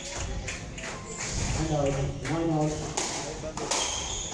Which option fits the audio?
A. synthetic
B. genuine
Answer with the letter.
B